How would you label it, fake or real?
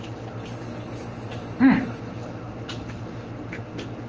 real